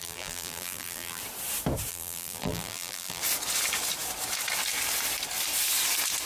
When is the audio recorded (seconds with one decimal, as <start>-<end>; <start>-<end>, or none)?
1.2-1.9; 3.2-6.3